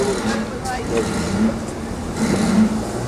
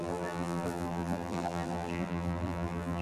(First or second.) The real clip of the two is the first